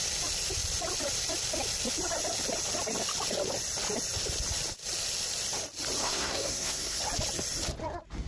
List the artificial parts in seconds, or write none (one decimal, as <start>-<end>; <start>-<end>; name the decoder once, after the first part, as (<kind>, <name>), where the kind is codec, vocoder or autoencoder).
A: 6.0-7.0 (codec, SNAC)